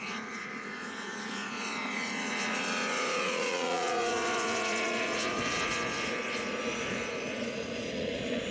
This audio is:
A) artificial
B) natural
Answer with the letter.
A